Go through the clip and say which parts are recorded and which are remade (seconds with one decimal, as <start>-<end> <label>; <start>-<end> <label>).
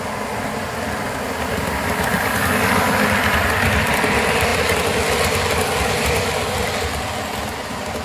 0.0-8.0 recorded